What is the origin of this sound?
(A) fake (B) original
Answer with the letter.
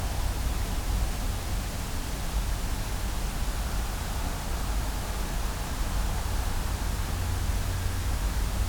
B